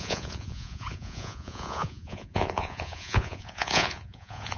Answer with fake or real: fake